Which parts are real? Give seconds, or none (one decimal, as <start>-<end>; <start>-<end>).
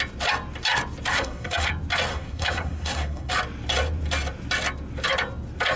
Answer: 0.0-1.1; 1.7-2.1; 3.3-5.8